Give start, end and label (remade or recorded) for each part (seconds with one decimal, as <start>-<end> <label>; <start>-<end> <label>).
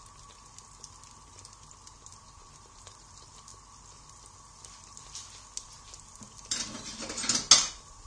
0.0-8.1 recorded